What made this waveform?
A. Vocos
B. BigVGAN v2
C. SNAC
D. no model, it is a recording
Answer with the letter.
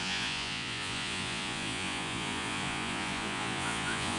A